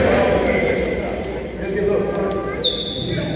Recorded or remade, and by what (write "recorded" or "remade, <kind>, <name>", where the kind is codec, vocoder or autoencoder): recorded